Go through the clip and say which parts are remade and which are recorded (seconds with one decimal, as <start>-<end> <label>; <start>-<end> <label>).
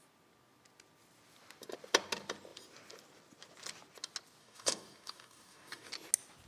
0.0-4.4 recorded; 4.4-5.9 remade; 5.9-6.5 recorded